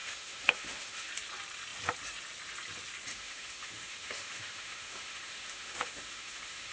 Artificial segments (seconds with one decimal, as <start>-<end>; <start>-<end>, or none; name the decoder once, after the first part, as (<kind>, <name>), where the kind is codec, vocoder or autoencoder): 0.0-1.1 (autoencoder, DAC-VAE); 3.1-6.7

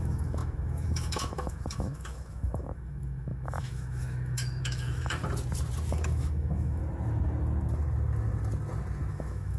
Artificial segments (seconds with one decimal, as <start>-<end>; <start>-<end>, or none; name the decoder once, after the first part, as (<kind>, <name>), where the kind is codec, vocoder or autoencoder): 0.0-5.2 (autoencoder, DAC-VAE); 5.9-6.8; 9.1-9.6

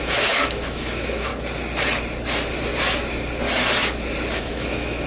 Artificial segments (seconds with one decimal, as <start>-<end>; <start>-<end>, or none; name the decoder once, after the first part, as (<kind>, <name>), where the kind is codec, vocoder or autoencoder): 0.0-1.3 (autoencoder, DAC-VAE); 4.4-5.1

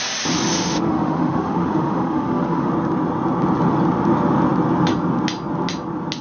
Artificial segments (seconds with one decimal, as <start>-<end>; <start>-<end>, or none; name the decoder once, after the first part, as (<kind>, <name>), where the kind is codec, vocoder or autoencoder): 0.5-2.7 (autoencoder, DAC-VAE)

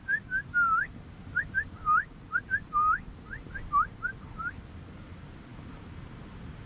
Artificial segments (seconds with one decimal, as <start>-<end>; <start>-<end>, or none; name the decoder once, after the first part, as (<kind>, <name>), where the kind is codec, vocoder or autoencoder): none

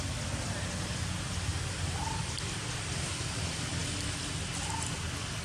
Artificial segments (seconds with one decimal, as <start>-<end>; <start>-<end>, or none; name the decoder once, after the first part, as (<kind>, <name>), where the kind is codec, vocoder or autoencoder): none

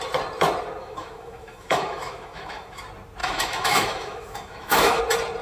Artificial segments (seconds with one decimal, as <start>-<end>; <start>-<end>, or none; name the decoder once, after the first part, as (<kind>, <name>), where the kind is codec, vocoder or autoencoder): 0.8-2.8 (autoencoder, DAC-VAE); 3.2-5.0